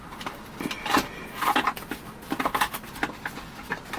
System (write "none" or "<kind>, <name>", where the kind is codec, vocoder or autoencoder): none